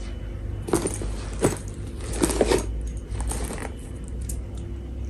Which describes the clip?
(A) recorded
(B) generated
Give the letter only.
A